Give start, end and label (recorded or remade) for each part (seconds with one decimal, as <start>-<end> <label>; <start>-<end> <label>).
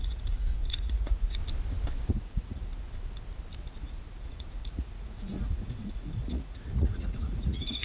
0.0-1.4 remade; 1.4-2.1 recorded; 2.1-2.7 remade; 2.7-3.9 recorded; 3.9-7.8 remade